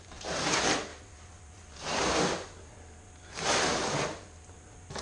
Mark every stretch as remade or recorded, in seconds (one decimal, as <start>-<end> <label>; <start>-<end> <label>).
0.0-5.0 recorded